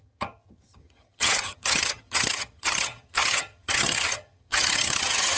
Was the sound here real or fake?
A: fake